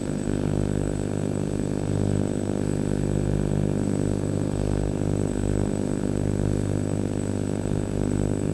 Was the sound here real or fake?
fake